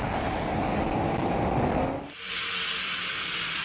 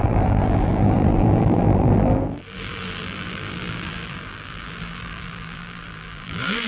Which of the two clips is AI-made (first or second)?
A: second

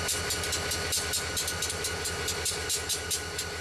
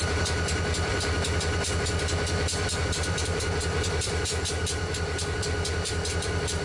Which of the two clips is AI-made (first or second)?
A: second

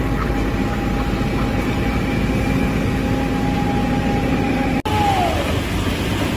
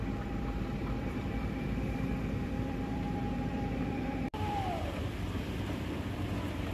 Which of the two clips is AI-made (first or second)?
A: second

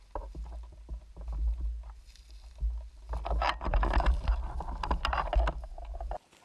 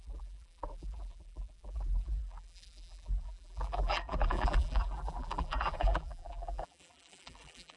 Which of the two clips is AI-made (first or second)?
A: second